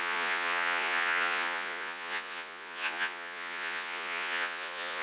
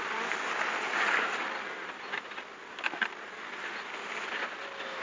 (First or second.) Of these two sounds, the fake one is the first